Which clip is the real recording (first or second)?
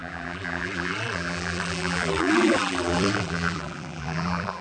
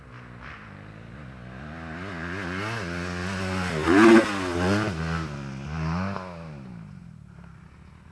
second